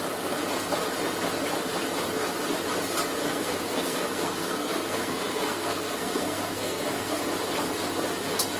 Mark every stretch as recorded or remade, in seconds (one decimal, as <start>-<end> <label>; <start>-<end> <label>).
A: 0.0-3.2 recorded; 3.2-7.2 remade; 7.2-8.6 recorded